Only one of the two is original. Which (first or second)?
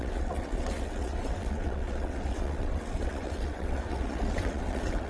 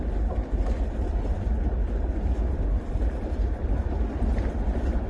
second